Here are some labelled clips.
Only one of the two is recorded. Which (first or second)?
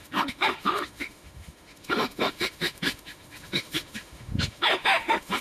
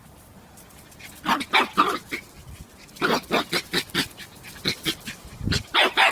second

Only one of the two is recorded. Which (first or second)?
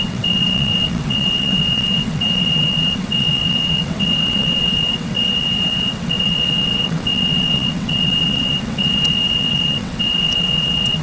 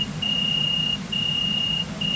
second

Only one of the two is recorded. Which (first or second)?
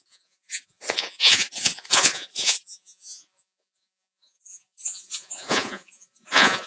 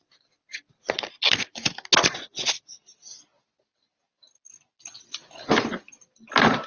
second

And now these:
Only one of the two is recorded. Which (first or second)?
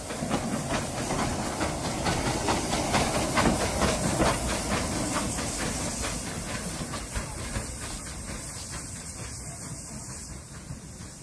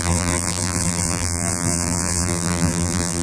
first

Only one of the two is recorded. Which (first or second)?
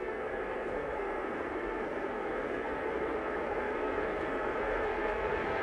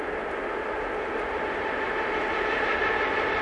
second